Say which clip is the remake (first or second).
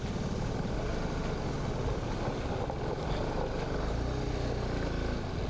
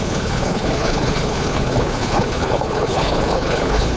second